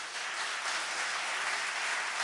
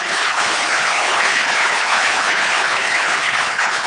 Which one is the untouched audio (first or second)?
first